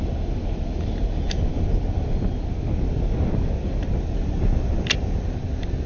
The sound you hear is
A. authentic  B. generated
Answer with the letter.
A